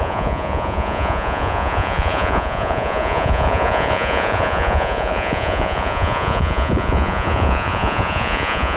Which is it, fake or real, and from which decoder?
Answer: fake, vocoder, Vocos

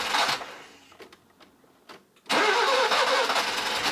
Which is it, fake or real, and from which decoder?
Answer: real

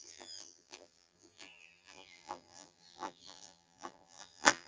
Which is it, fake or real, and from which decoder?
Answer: fake, vocoder, BigVGAN v2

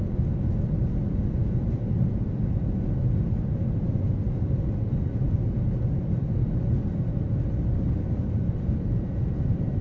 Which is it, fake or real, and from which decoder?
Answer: real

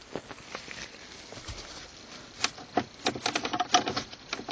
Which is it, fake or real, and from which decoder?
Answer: real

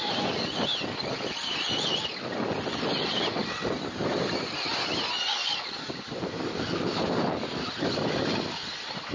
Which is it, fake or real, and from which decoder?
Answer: real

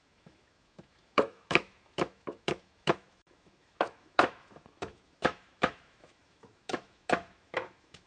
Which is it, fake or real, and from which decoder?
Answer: fake, autoencoder, DAC-VAE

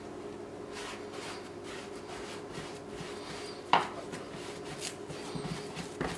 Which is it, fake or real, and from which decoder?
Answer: real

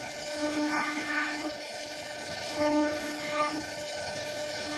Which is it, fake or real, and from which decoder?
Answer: fake, codec, HILCodec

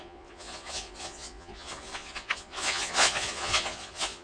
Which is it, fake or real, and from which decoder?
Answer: fake, vocoder, Vocos